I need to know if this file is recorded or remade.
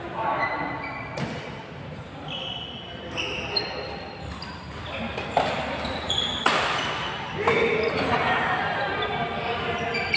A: recorded